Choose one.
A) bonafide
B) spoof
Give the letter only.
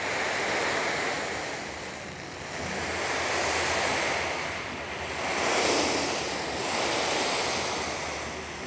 A